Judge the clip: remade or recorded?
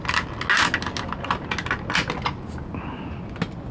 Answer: recorded